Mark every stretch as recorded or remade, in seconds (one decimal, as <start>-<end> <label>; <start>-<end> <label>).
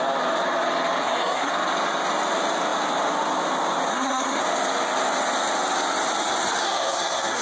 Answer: 0.0-1.0 recorded; 1.0-1.5 remade; 1.5-3.9 recorded; 3.9-4.4 remade; 4.4-6.6 recorded; 6.6-7.4 remade